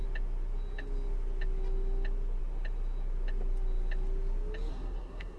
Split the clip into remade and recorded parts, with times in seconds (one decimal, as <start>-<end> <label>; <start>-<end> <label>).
0.0-4.7 recorded; 4.7-5.4 remade